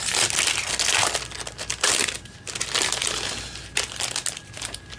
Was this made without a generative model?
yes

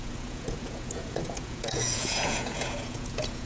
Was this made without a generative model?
no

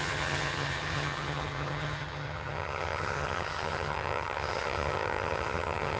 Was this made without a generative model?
no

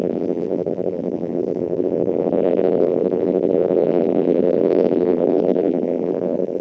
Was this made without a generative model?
no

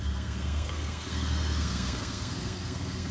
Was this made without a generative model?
no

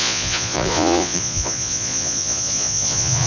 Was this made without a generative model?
no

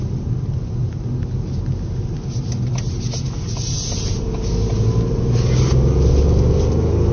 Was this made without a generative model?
yes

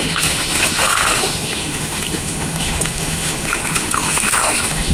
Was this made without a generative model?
no